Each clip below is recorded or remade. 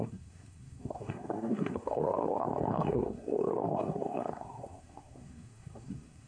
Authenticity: remade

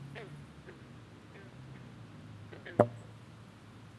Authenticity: recorded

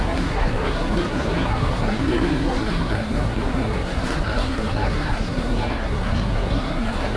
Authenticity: remade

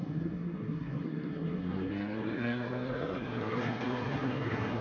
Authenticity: remade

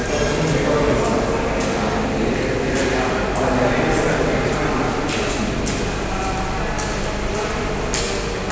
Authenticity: recorded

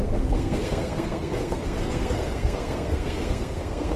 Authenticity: remade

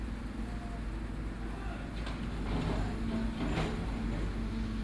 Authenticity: recorded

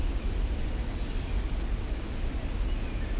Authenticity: recorded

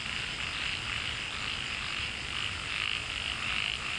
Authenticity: recorded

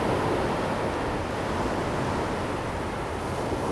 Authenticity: recorded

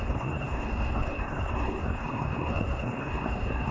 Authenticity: remade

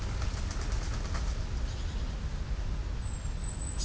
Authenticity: recorded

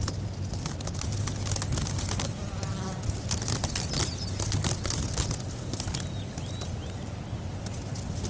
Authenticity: recorded